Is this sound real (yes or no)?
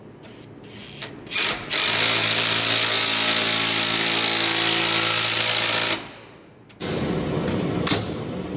yes